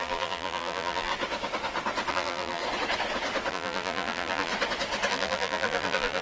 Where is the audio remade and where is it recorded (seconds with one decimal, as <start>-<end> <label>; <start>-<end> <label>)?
0.0-1.1 remade; 1.1-2.1 recorded; 2.1-2.6 remade; 2.6-3.5 recorded; 3.5-4.5 remade; 4.5-5.1 recorded; 5.1-6.2 remade